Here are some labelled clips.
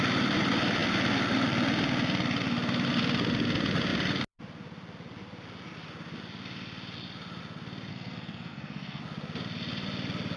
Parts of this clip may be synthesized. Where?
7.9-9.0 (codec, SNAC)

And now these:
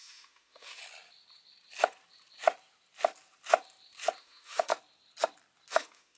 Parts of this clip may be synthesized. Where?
0.0-0.8 (autoencoder, DAC-VAE); 4.2-4.7; 5.7-6.2

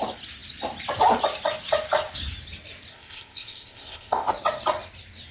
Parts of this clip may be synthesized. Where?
2.9-4.3 (codec, ZipCodec)

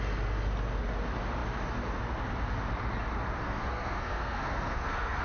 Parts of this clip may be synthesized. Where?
3.4-5.2 (codec, SNAC)